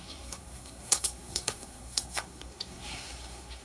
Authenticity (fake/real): fake